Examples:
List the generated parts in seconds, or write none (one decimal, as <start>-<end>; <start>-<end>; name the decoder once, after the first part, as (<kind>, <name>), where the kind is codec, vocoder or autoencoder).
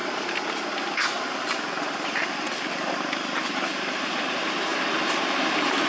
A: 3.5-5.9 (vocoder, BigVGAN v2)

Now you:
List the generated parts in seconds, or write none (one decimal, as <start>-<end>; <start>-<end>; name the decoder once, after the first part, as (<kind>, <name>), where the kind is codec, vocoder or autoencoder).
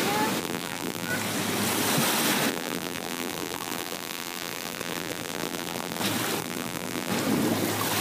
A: 0.4-1.1 (vocoder, BigVGAN v2); 2.5-6.0; 6.4-7.1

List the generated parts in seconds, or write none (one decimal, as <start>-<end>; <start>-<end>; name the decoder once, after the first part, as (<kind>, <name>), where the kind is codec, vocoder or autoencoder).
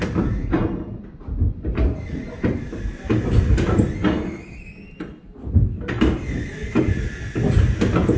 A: 6.6-7.3 (vocoder, BigVGAN v2)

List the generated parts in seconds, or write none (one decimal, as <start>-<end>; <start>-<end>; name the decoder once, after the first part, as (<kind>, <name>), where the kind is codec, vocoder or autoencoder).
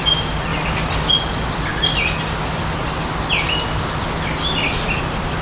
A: none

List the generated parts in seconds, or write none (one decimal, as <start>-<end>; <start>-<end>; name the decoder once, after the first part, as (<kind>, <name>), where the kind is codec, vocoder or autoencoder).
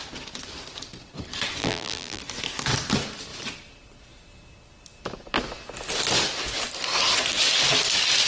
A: 1.6-2.2 (vocoder, BigVGAN v2)